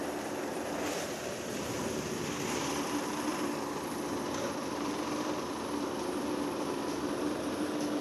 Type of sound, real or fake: fake